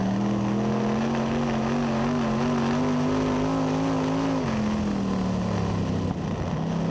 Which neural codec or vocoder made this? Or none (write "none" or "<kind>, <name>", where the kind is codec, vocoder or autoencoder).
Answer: none